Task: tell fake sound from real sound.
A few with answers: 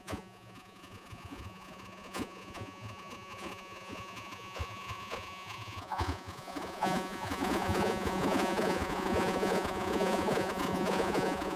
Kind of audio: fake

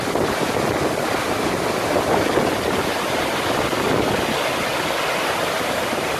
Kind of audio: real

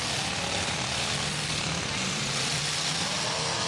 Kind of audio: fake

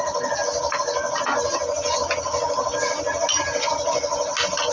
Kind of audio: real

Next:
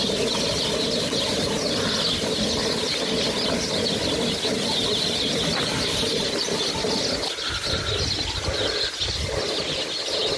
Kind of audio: real